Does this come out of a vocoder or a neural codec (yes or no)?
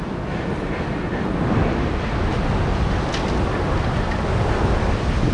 no